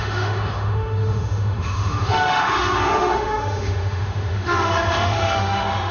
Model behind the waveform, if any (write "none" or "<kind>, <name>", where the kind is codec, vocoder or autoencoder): autoencoder, DAC-VAE